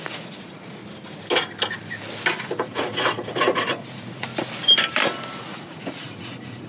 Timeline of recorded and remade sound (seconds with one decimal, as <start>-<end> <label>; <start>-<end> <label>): 0.0-0.8 remade; 0.8-2.4 recorded; 2.4-4.3 remade; 4.3-5.4 recorded; 5.4-6.7 remade